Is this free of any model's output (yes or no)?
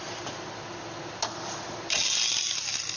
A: yes